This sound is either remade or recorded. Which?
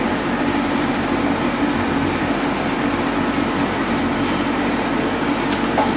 remade